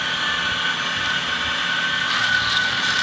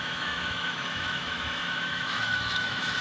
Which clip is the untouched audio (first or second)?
first